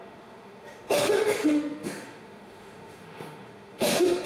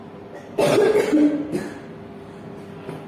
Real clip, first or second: second